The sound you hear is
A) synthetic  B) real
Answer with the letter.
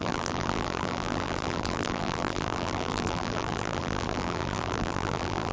A